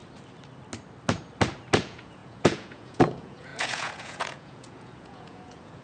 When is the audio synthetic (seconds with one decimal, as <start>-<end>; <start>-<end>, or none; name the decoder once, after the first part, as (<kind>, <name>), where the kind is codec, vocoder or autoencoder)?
1.8-5.8 (vocoder, Vocos)